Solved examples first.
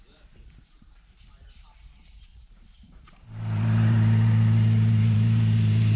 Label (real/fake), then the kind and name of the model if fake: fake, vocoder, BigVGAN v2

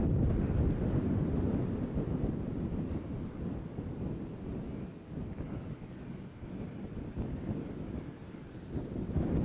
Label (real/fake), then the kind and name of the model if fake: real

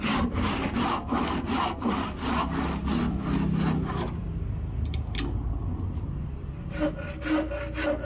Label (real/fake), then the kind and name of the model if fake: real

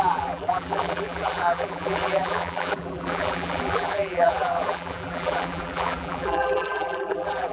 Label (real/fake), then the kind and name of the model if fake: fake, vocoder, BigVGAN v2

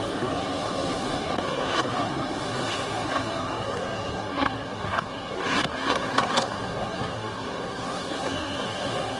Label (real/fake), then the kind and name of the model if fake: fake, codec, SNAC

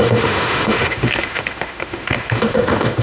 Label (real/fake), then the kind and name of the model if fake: fake, autoencoder, DAC-VAE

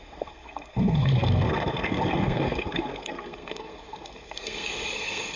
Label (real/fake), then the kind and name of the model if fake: fake, codec, SNAC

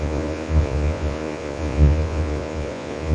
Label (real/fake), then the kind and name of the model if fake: fake, vocoder, Vocos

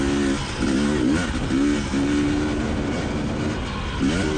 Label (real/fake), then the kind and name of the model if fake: real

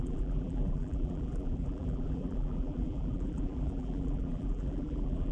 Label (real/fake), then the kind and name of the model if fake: fake, vocoder, BigVGAN v2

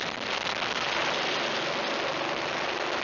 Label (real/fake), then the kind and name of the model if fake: real